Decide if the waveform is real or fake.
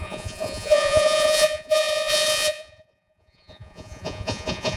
fake